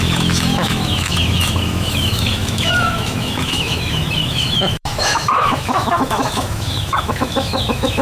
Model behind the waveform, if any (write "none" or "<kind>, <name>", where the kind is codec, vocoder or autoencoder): autoencoder, DAC-VAE